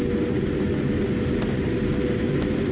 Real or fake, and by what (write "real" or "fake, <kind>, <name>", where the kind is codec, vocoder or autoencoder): real